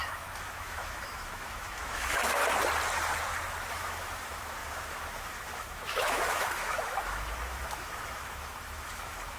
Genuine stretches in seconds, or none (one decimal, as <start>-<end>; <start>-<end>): 2.4-3.7

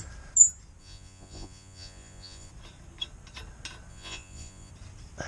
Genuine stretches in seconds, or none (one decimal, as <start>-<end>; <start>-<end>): 0.0-0.8; 2.5-3.9; 4.7-5.3